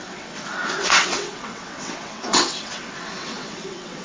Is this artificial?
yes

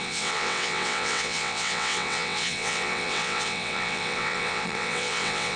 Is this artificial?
yes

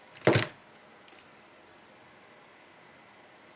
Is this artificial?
no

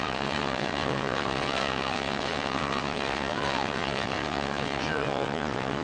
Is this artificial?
yes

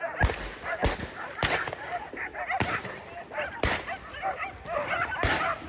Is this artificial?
no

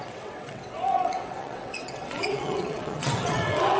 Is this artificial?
yes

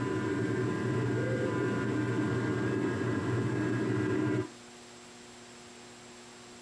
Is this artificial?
no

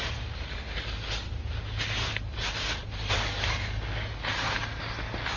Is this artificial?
no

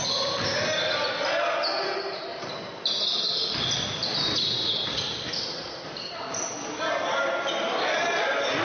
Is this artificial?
no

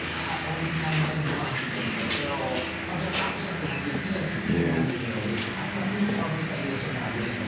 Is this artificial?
no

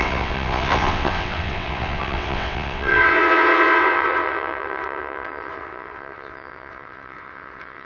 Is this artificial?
yes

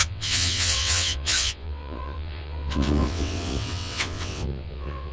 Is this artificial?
yes